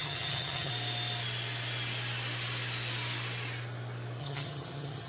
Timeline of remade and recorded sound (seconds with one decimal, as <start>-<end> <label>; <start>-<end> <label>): 0.0-0.7 remade; 0.7-4.2 recorded; 4.2-5.1 remade